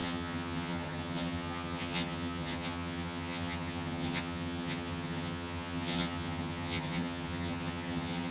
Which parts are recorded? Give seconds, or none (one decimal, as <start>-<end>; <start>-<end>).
none